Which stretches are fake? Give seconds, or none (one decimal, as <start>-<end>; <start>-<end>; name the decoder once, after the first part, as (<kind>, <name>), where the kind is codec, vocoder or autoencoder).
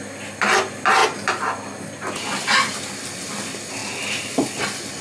none